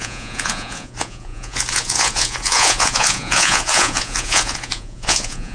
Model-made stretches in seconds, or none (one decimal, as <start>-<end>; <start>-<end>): 0.0-5.5